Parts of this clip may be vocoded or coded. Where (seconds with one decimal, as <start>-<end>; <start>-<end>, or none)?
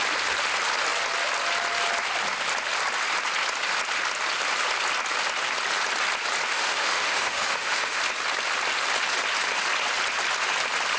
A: 6.5-8.0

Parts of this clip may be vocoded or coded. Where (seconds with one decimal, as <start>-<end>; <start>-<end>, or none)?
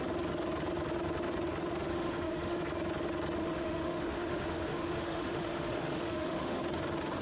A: 1.9-2.6; 3.4-6.6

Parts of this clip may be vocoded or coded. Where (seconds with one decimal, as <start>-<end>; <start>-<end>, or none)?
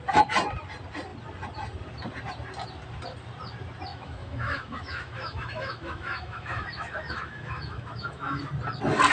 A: 3.9-8.4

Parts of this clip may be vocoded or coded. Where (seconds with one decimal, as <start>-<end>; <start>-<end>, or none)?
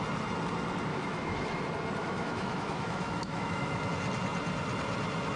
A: 0.9-1.6; 2.0-3.8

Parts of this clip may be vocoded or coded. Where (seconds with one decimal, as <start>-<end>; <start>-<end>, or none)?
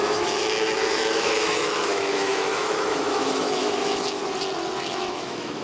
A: 0.0-4.2; 4.8-5.6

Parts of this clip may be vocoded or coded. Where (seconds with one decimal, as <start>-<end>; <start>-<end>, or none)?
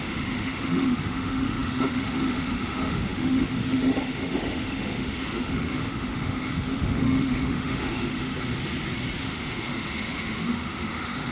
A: 0.0-8.3; 9.2-11.3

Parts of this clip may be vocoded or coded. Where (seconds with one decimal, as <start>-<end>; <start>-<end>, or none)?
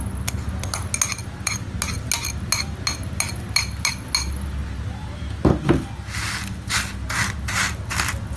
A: none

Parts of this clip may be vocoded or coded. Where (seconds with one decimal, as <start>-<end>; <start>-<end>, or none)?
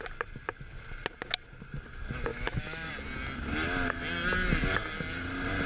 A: 2.3-2.9